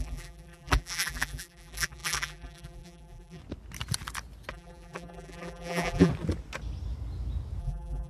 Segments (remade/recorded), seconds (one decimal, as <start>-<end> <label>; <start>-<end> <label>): 0.0-3.4 remade; 3.4-4.5 recorded; 4.5-6.1 remade; 6.1-7.6 recorded; 7.6-8.1 remade